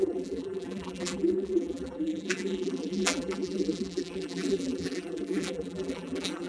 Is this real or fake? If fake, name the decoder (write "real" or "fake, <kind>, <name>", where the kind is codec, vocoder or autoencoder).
fake, vocoder, BigVGAN v2